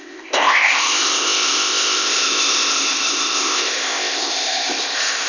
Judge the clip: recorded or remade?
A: remade